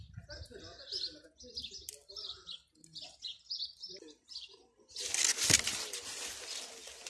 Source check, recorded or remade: recorded